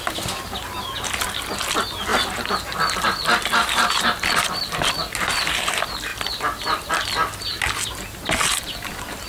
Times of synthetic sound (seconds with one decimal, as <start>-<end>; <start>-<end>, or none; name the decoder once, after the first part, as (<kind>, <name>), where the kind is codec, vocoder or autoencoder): none